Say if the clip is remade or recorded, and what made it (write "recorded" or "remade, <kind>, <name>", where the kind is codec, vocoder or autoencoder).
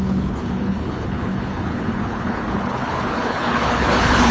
remade, codec, HILCodec